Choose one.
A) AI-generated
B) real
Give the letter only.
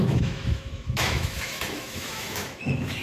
A